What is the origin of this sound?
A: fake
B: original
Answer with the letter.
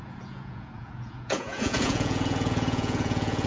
A